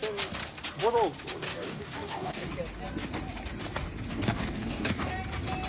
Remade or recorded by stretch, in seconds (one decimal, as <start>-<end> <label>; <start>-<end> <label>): 0.0-1.5 recorded; 1.5-2.5 remade; 2.5-4.1 recorded; 4.1-5.1 remade; 5.1-5.7 recorded